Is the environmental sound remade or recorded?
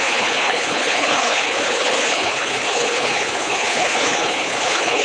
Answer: remade